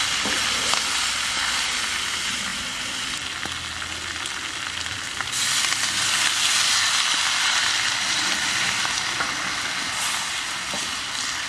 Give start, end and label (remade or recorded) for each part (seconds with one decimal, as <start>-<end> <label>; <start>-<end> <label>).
0.0-11.5 recorded